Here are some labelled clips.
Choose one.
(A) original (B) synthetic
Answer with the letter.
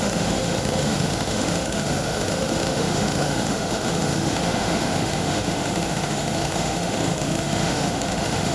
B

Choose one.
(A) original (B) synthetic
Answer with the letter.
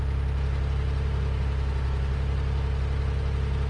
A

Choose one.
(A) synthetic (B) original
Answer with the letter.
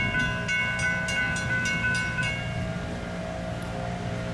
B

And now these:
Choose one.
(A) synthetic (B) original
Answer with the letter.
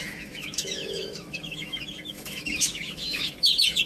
A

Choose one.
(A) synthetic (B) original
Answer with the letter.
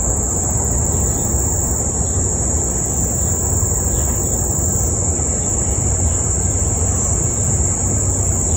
B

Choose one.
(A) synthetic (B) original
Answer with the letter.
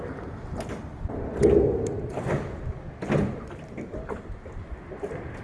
B